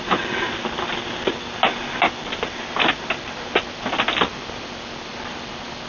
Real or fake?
real